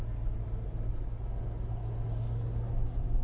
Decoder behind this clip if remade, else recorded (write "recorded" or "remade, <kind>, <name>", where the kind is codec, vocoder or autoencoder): recorded